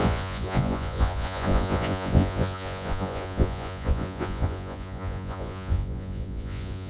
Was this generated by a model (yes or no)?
yes